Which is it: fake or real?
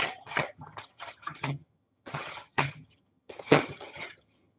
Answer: fake